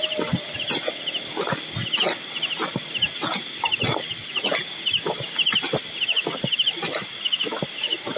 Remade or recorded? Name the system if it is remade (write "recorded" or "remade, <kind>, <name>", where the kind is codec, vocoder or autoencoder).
recorded